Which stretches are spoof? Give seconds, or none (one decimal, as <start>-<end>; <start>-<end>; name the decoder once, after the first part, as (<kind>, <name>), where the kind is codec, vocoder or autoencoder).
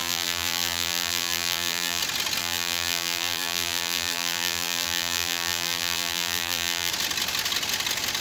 0.0-2.0 (vocoder, BigVGAN v2); 2.4-6.9